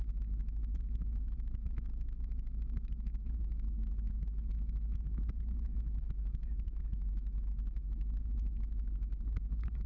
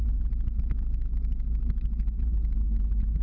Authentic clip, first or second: second